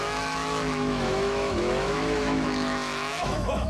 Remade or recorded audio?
remade